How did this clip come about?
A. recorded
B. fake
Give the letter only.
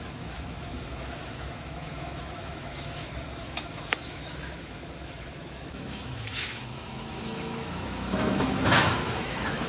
B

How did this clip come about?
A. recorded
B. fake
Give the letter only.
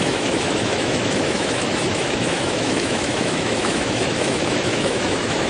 B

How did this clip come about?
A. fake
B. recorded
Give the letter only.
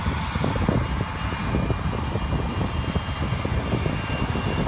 B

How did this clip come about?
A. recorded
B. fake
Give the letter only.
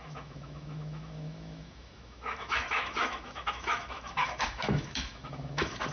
B